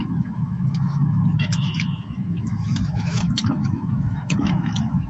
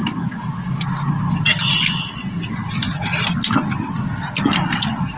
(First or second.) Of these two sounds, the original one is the second